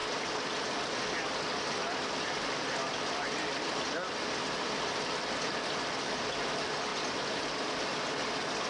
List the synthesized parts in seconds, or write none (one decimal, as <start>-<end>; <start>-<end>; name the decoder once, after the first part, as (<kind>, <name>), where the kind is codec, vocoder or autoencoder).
0.0-4.1 (vocoder, BigVGAN v2); 6.9-8.7